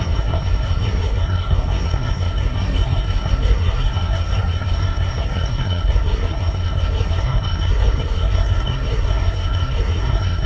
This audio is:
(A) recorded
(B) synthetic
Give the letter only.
B